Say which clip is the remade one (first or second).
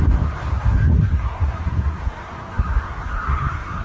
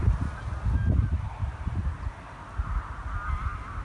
first